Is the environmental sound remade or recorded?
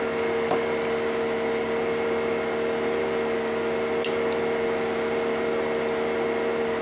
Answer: recorded